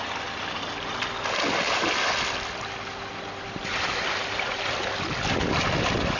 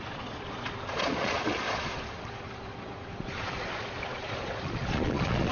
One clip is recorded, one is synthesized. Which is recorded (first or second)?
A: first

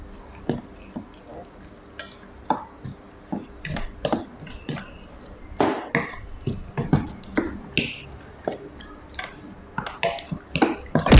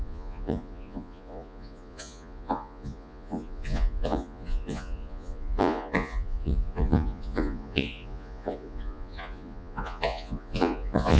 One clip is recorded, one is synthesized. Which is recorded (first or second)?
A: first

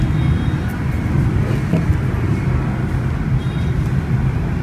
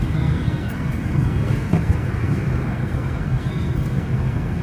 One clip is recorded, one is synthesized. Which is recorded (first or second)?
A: first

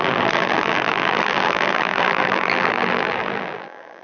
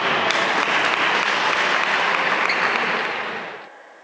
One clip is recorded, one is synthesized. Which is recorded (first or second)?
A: second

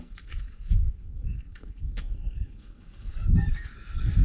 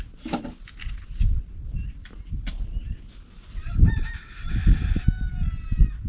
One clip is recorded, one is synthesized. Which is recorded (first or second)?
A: second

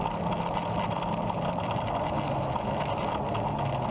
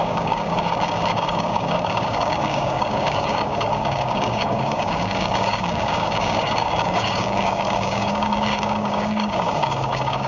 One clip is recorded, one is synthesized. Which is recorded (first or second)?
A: first